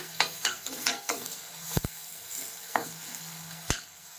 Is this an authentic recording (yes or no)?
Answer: no